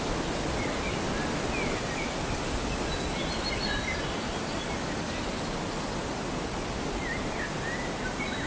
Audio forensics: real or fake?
real